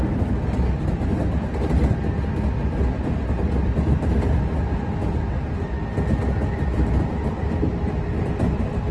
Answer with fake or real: real